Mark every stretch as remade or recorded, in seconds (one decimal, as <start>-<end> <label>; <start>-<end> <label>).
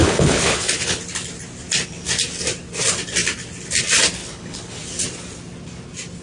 0.0-1.0 remade; 1.0-4.2 recorded; 4.2-4.8 remade; 4.8-6.2 recorded